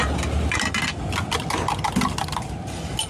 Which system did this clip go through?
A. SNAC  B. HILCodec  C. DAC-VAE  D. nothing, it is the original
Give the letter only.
D